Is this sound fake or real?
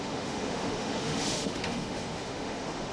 fake